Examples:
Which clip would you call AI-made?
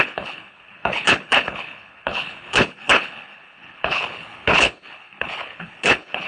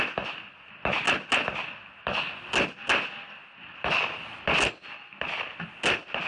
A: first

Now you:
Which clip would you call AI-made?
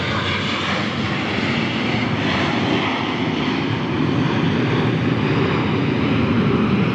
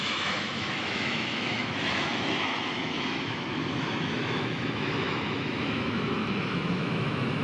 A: second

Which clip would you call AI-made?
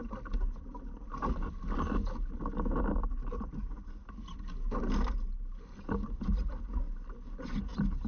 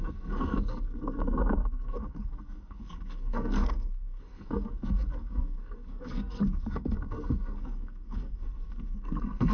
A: second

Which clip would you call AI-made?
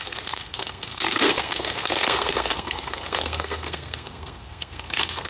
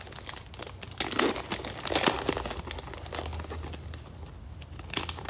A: first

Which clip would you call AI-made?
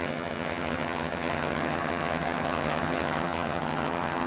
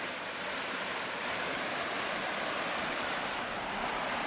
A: first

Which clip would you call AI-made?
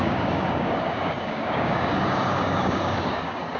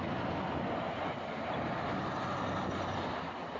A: first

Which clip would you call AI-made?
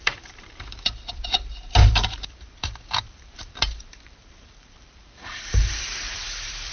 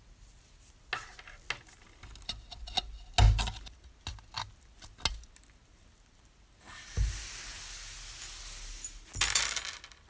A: first